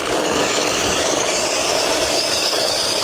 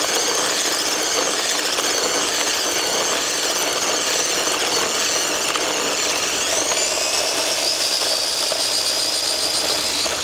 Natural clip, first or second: second